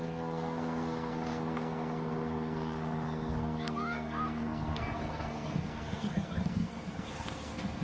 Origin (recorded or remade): remade